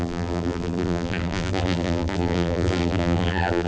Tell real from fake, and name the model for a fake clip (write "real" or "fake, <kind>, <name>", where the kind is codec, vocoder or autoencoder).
fake, vocoder, BigVGAN v2